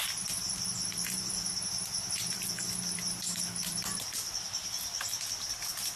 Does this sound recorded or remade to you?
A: recorded